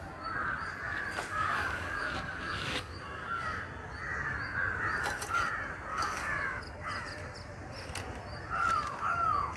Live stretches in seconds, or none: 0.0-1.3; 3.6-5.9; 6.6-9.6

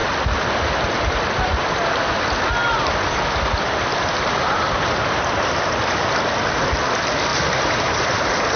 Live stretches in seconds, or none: 0.0-3.9; 5.5-7.3; 8.2-8.6

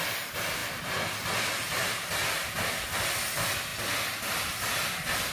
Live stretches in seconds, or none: 0.0-5.3

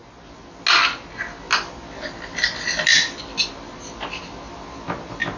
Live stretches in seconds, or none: 0.0-5.4